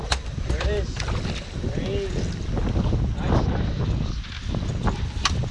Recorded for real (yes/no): yes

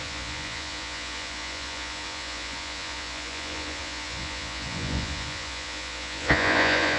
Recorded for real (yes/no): no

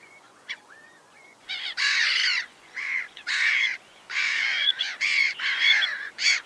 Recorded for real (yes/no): no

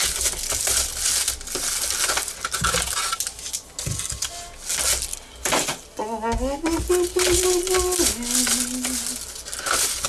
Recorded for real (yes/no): yes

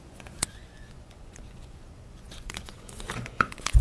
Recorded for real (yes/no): no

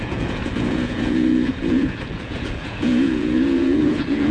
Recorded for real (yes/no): no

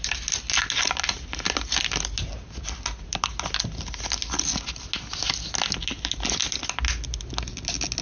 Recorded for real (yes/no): yes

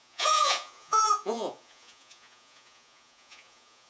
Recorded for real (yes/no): no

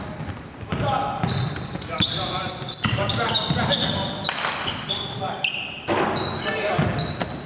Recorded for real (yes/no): yes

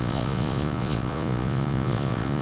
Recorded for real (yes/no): no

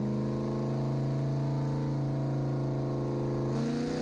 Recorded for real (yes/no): yes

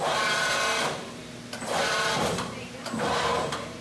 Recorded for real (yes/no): yes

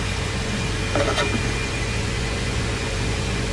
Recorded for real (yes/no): no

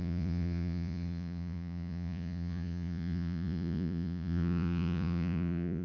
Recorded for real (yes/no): no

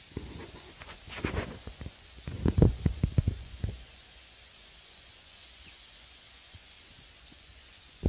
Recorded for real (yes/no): no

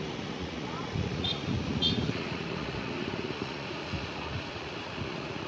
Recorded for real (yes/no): no